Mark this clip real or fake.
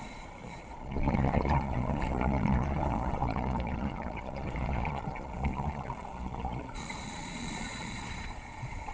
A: fake